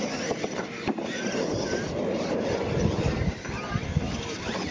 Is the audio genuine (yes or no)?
yes